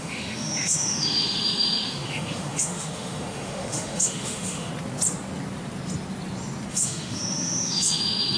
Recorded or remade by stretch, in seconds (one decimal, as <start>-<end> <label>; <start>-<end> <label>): 0.0-4.7 remade; 4.7-6.7 recorded; 6.7-8.4 remade